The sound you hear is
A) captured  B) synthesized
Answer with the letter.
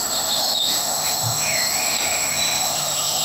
B